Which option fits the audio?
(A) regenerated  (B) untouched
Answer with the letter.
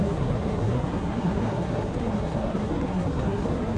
A